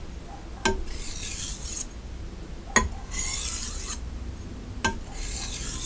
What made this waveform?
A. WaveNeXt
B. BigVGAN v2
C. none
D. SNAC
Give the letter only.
C